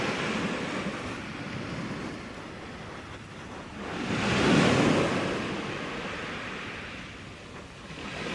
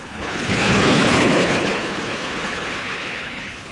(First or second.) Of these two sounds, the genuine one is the first